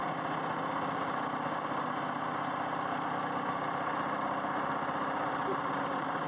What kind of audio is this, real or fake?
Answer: real